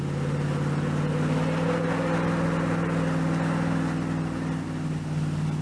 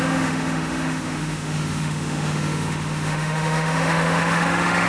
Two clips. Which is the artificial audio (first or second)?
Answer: second